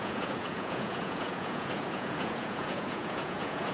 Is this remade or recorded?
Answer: remade